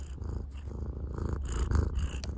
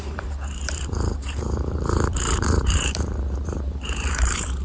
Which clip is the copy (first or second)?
second